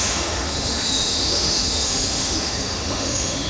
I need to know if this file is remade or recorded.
remade